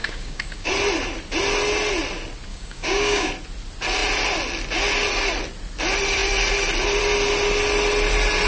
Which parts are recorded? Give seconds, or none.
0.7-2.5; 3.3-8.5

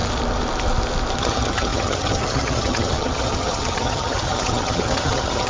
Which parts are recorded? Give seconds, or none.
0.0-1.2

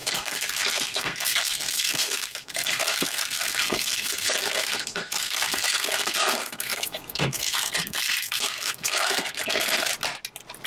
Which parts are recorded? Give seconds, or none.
9.9-10.7

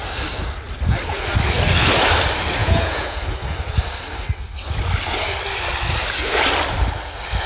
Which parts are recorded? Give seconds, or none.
0.0-2.6; 3.2-7.5

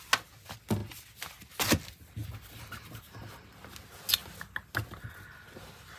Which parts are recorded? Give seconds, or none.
0.0-6.0

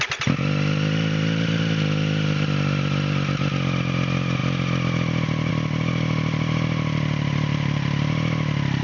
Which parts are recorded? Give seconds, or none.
0.0-8.8

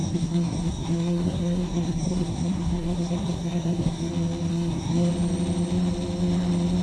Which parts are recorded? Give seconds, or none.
4.1-4.5; 5.1-6.8

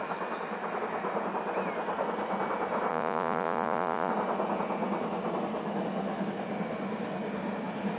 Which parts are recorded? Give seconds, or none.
0.0-2.9; 4.1-8.0